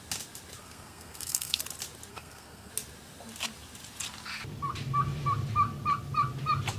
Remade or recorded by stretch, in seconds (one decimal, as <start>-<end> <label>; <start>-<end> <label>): 0.0-0.6 recorded; 0.6-1.6 remade; 1.6-2.1 recorded; 2.1-2.7 remade; 2.7-6.8 recorded